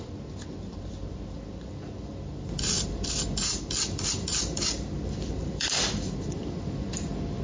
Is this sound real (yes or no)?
no